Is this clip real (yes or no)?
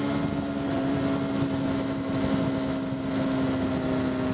yes